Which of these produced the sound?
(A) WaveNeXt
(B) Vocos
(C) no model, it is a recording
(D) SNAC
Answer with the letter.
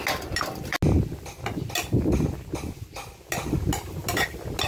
C